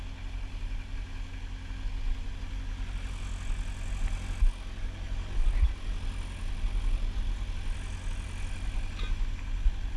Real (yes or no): yes